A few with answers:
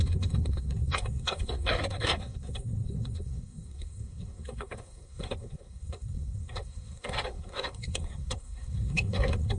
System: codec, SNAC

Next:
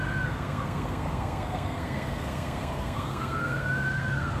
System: codec, SNAC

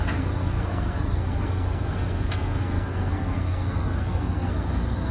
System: codec, SNAC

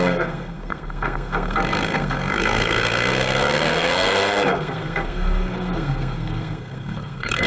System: codec, SNAC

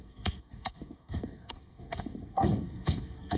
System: codec, SNAC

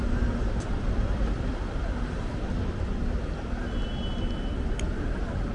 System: none